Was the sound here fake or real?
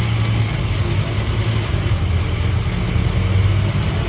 real